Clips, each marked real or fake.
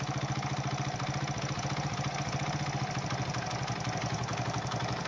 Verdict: real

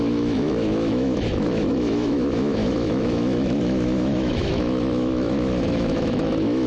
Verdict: fake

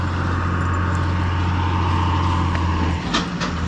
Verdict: real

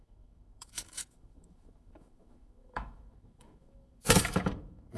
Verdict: fake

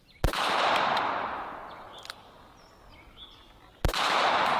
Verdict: real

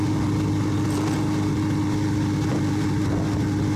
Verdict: real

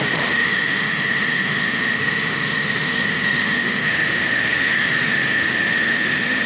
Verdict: fake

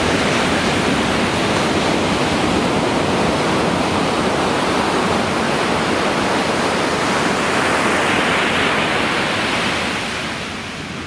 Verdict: real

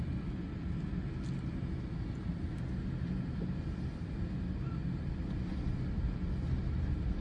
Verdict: real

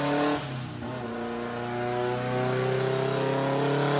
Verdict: real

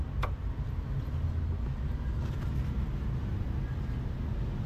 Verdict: real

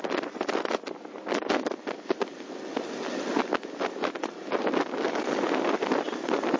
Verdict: real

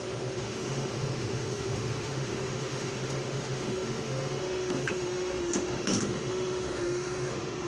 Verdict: fake